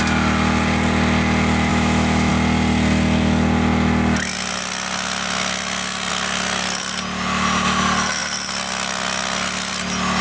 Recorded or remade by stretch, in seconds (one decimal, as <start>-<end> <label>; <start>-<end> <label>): 0.0-1.7 recorded; 1.7-2.3 remade; 2.3-10.2 recorded